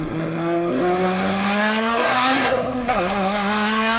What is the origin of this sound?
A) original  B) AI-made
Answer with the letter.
B